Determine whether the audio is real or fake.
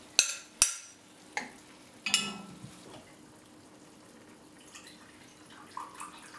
real